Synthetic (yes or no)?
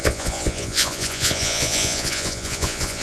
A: yes